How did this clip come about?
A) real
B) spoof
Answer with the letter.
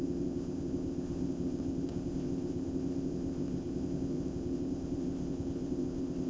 B